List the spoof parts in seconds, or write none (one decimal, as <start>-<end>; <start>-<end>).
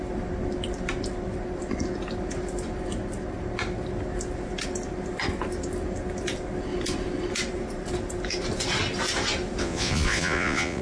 9.6-10.8